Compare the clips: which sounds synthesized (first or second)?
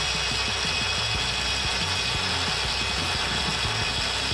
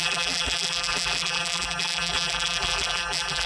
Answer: second